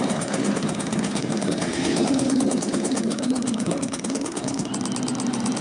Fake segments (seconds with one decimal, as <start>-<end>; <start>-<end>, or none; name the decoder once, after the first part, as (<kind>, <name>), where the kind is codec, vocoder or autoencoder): 0.0-4.7 (codec, SNAC)